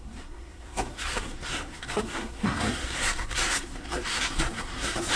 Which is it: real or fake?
fake